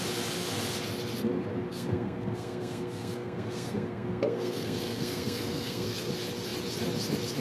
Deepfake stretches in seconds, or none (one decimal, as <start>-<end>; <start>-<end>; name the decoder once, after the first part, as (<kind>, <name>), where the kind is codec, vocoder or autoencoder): 1.7-6.1 (codec, SNAC)